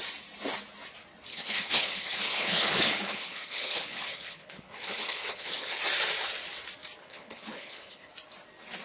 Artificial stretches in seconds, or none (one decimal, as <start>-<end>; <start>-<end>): 1.3-5.8; 7.0-8.1